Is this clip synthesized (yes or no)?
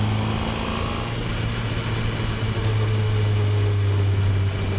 no